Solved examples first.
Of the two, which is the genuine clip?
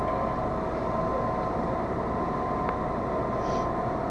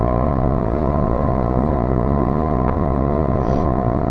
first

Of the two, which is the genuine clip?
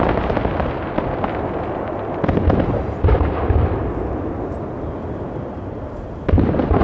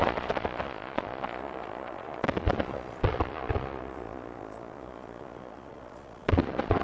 first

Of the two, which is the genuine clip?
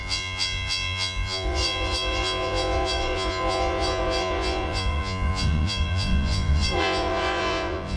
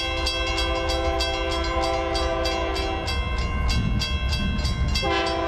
second